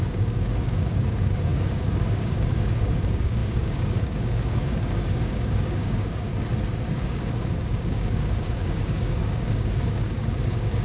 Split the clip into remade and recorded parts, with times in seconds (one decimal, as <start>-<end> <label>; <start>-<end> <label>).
0.0-6.3 remade; 6.3-6.9 recorded; 6.9-10.8 remade